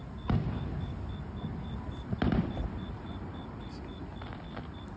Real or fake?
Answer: real